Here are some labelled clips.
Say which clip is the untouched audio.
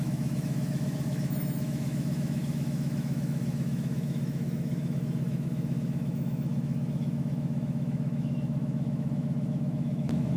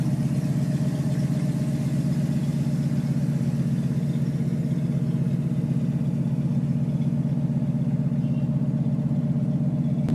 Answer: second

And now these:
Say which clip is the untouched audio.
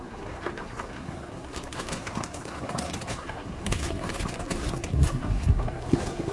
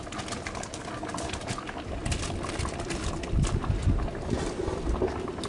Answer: second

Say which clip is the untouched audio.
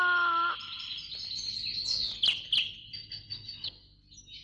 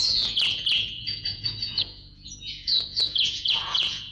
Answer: first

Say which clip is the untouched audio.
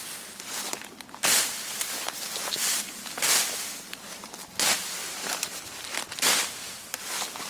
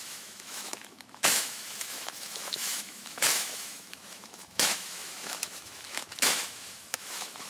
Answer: first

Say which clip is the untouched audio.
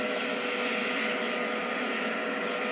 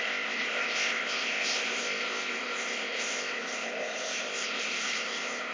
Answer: first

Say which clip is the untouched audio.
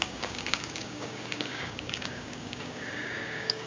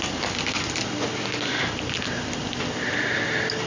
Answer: second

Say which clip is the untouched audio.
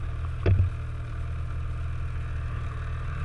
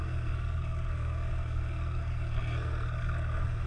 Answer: first